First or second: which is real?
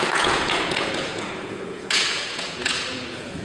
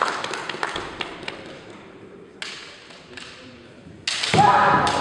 second